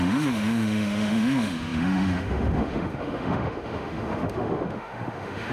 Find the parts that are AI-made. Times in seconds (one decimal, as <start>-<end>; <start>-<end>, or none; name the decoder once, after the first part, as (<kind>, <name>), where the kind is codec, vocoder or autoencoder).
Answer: 0.0-5.5 (autoencoder, DAC-VAE)